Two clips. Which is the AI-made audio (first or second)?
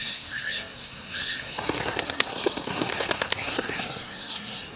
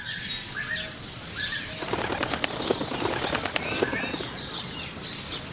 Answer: first